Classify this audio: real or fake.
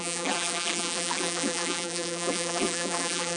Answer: fake